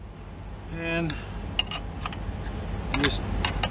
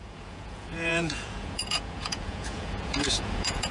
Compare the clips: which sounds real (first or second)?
first